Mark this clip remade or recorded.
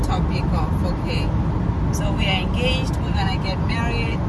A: recorded